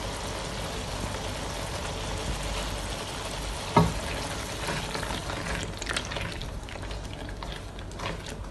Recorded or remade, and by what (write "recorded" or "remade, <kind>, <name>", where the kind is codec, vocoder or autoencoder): recorded